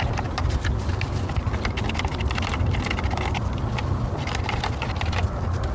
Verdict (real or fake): real